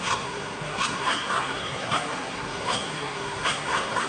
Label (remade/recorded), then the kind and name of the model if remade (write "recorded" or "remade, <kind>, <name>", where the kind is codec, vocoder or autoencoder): remade, codec, SNAC